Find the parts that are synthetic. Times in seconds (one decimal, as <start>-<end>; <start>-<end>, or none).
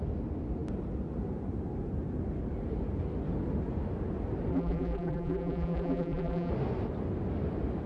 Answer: 4.5-6.5